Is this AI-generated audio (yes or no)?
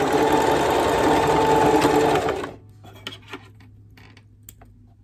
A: no